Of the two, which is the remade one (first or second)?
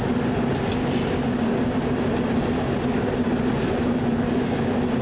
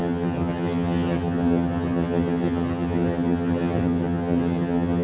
second